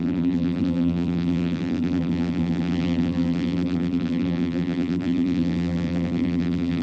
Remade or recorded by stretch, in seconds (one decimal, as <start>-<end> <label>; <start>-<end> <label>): 0.0-6.8 remade